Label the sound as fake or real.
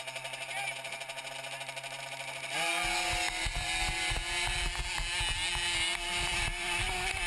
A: real